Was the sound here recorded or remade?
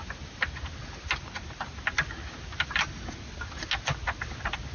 recorded